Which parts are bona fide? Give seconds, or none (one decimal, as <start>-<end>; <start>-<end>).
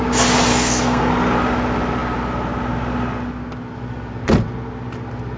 0.0-0.5; 1.1-5.4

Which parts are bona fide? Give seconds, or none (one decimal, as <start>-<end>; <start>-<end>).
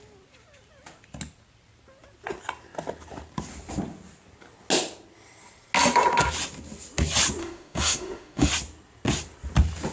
0.0-7.4; 8.5-9.9